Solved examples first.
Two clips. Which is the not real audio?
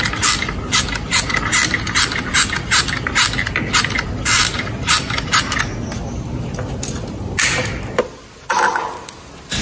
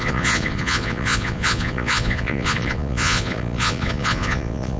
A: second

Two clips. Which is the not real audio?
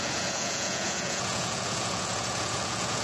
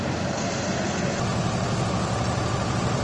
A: first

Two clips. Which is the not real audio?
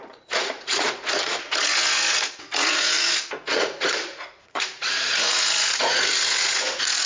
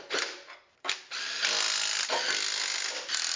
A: first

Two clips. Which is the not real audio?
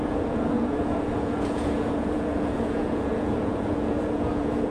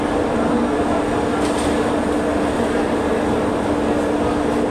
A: first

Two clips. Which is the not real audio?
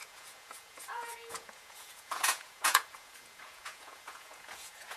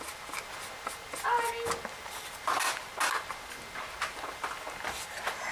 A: first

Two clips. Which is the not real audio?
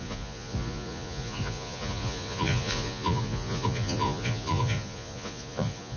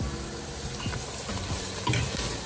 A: first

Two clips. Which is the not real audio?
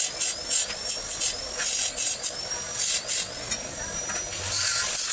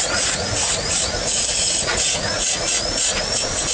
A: second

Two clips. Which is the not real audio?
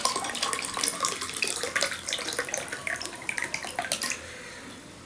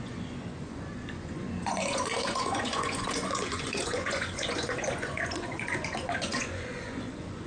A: second